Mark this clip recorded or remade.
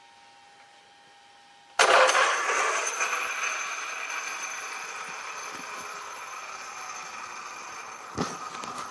recorded